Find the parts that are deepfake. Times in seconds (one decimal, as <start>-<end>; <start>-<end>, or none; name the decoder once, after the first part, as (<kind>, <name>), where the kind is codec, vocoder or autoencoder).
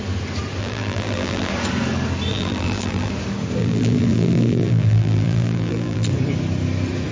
0.6-1.5 (vocoder, BigVGAN v2); 2.3-3.1; 3.6-6.1